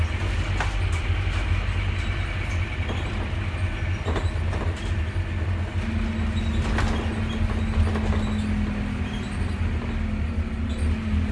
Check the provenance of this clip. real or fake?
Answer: real